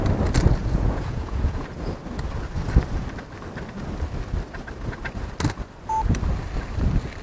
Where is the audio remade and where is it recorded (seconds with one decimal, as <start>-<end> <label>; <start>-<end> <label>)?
0.0-0.6 recorded; 0.6-1.6 remade; 1.6-7.2 recorded